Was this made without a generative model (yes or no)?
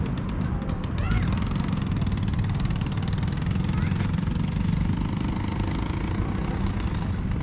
yes